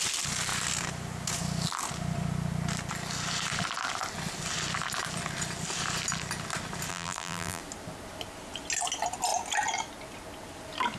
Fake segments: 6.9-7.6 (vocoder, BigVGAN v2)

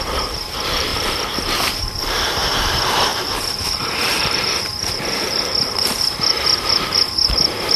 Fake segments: 0.0-7.8 (vocoder, BigVGAN v2)

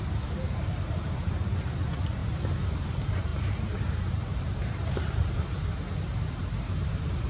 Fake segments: 0.0-7.3 (vocoder, BigVGAN v2)

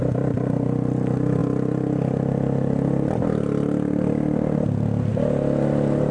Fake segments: none

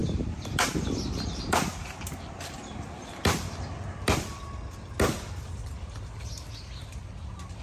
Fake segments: 0.0-4.4 (vocoder, BigVGAN v2)

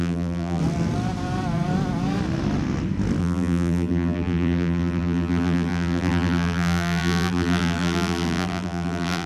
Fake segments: 0.0-0.6 (vocoder, BigVGAN v2); 3.2-9.3